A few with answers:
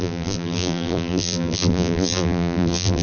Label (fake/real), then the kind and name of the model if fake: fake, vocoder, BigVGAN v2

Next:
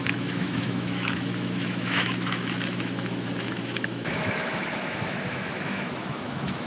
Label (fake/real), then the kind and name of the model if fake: fake, autoencoder, DAC-VAE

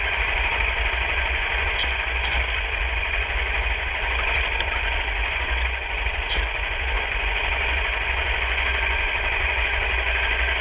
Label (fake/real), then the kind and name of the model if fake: fake, vocoder, Vocos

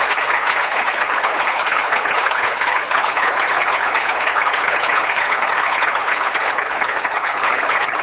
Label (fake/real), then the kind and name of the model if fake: fake, codec, HILCodec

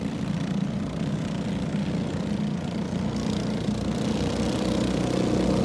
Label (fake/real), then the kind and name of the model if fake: real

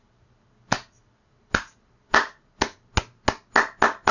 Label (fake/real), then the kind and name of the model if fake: real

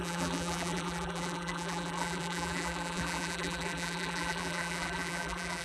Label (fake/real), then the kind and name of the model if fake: fake, vocoder, BigVGAN v2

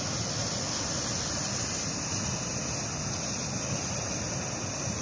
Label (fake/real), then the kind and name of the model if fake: real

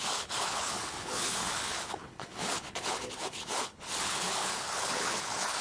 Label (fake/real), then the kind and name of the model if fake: fake, codec, HILCodec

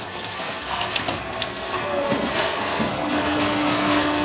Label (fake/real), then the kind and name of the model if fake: fake, codec, SNAC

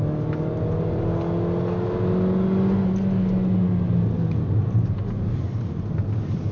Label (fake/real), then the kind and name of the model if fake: real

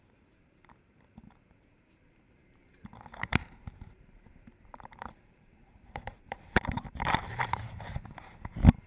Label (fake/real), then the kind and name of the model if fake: fake, vocoder, BigVGAN v2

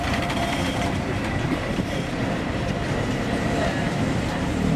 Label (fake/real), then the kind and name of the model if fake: fake, vocoder, BigVGAN v2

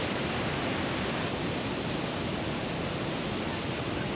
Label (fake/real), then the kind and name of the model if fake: real